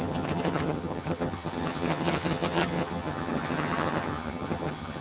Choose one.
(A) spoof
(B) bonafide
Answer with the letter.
A